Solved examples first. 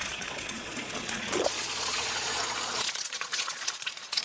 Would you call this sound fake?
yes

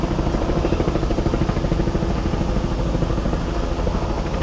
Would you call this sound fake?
no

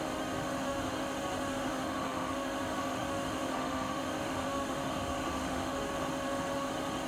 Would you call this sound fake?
yes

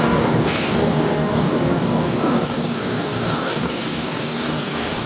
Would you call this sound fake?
yes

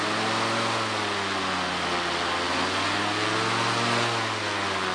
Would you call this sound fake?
no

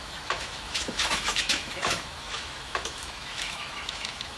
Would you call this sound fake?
yes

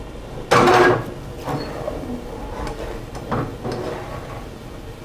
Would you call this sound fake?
no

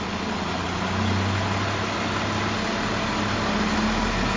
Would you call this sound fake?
no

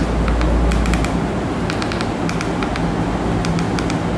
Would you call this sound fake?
no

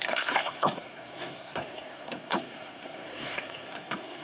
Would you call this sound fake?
yes